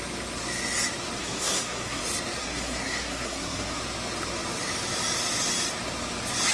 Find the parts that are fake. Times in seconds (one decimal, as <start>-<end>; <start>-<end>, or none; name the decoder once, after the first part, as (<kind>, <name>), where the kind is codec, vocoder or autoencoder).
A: 1.2-2.0 (codec, SNAC); 2.4-3.8